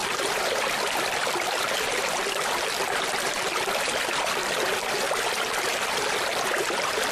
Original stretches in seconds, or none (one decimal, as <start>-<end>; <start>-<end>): 4.3-7.1